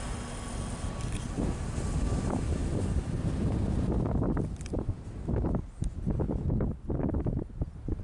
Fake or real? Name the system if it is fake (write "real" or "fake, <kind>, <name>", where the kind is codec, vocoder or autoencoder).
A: real